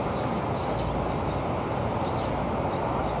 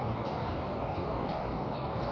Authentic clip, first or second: first